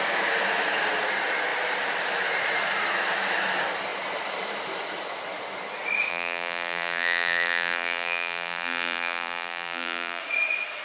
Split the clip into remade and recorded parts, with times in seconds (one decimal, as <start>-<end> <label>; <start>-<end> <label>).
0.0-6.1 recorded; 6.1-10.2 remade; 10.2-10.8 recorded